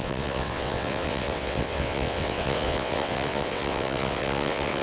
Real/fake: fake